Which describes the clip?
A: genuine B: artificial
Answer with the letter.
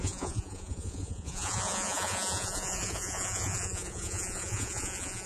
B